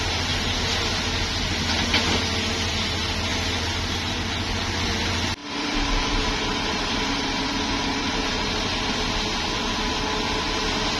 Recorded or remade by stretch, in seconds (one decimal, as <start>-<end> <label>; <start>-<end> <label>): 0.0-5.4 recorded; 5.4-8.9 remade; 8.9-11.0 recorded